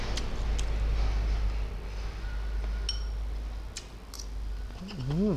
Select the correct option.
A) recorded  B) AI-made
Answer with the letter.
A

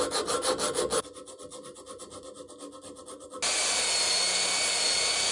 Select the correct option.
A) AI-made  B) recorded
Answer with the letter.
B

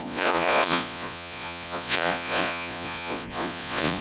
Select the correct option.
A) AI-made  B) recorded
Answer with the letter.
A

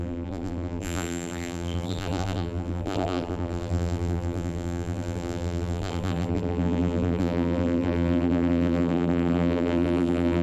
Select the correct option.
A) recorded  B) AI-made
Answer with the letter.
B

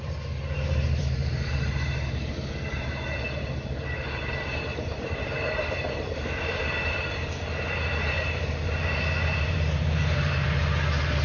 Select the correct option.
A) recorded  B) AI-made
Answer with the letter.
B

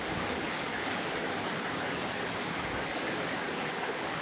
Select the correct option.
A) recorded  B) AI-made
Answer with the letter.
B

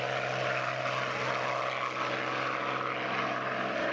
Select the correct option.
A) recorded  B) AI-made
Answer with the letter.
A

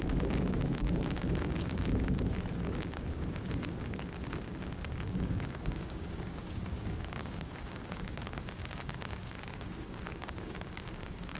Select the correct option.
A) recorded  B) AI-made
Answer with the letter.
B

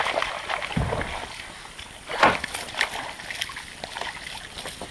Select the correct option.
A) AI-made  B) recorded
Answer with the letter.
B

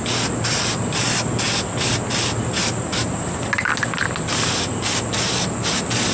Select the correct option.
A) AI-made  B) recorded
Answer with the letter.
B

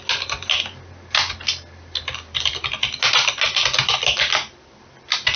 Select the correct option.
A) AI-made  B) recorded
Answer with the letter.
B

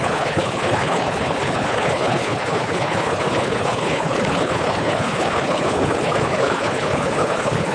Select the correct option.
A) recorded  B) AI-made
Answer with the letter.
B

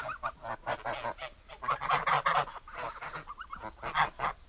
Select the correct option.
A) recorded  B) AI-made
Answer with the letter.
A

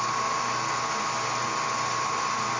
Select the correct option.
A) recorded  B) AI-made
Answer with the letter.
A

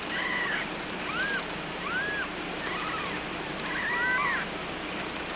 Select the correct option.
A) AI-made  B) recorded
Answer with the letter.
B